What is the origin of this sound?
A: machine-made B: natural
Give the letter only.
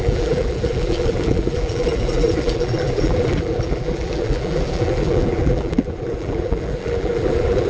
A